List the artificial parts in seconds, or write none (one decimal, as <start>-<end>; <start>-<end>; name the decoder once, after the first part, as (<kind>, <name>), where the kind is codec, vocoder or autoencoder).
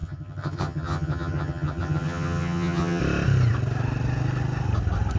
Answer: 0.0-3.0 (vocoder, HiFi-GAN)